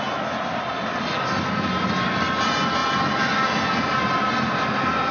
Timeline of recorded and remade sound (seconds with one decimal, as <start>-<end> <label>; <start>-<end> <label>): 0.0-5.1 recorded